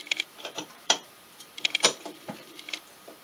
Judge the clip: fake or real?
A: fake